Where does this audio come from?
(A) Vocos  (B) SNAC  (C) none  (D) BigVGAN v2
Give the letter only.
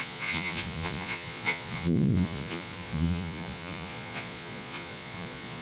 A